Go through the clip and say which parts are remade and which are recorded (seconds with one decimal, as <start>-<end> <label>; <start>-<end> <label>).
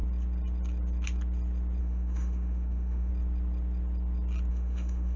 0.0-1.8 recorded; 1.8-3.1 remade; 3.1-4.5 recorded; 4.5-5.2 remade